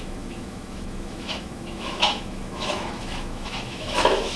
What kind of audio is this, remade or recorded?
remade